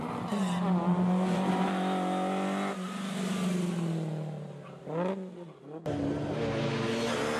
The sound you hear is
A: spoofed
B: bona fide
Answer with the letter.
B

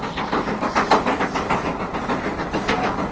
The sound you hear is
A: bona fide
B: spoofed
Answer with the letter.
A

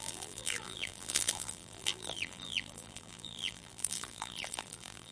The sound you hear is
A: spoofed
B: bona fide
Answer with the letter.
A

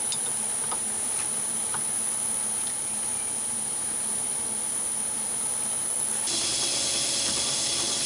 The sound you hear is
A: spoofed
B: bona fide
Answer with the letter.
B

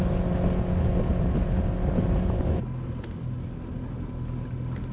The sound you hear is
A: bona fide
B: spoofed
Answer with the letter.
A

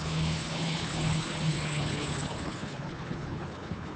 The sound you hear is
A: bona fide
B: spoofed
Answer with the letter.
B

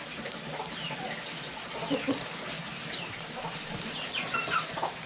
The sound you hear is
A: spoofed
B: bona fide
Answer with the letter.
B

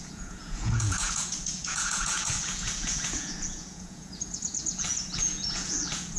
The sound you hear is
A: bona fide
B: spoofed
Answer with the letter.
B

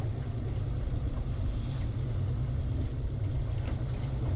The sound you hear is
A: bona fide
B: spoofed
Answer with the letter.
A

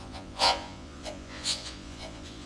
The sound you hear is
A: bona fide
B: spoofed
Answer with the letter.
B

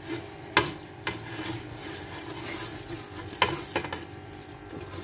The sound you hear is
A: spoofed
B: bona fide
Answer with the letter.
B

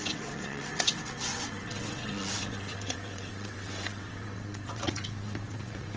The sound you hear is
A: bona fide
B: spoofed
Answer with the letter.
B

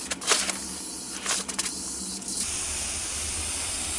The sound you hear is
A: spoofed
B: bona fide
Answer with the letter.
B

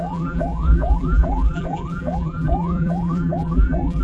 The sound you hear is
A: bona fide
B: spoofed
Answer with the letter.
B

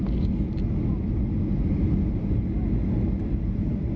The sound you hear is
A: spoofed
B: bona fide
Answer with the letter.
B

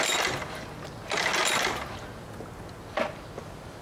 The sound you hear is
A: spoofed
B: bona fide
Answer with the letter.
B